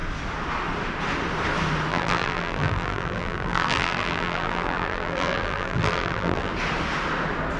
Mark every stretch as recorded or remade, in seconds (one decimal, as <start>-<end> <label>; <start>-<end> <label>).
0.0-1.9 recorded; 1.9-6.5 remade; 6.5-7.6 recorded

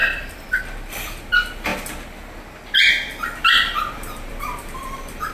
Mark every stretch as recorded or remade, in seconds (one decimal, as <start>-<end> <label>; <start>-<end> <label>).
0.0-1.7 remade; 1.7-3.4 recorded; 3.4-5.3 remade

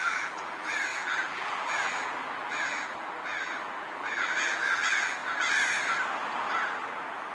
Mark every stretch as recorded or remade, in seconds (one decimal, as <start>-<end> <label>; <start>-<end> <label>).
0.0-5.2 remade; 5.2-6.4 recorded; 6.4-7.3 remade

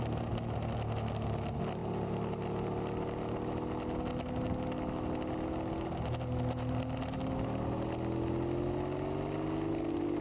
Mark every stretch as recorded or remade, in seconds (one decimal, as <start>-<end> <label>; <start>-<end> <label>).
0.0-10.2 recorded

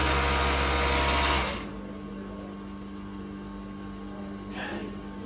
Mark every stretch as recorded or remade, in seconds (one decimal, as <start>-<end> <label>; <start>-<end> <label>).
0.0-5.3 recorded

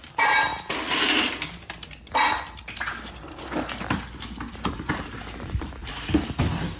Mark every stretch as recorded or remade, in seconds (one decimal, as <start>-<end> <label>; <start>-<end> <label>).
0.0-0.5 remade; 0.5-4.5 recorded; 4.5-6.8 remade

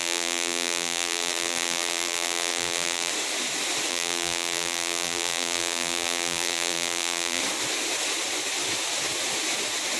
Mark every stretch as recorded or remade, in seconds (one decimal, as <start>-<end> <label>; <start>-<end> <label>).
0.0-3.1 remade; 3.1-3.9 recorded; 3.9-7.4 remade; 7.4-10.0 recorded

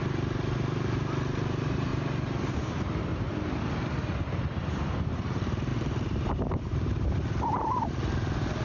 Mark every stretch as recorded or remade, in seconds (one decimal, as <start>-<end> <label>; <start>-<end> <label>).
0.0-1.9 remade; 1.9-2.5 recorded; 2.5-3.1 remade; 3.1-4.6 recorded; 4.6-8.6 remade